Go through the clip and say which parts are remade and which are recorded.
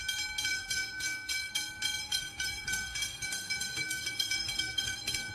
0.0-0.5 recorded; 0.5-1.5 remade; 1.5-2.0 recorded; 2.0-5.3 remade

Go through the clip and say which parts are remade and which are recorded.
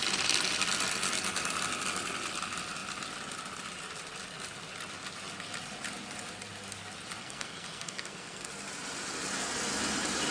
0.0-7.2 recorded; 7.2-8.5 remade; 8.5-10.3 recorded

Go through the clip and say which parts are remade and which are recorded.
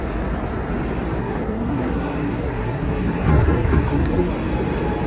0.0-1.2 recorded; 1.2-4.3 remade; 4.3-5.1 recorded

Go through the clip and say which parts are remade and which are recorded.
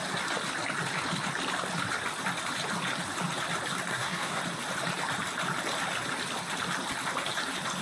0.0-3.9 recorded; 3.9-4.4 remade; 4.4-7.8 recorded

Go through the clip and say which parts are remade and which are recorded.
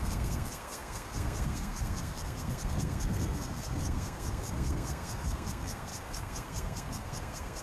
0.0-7.6 remade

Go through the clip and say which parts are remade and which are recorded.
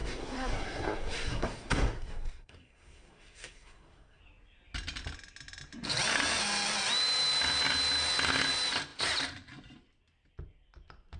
0.0-4.2 remade; 4.2-11.2 recorded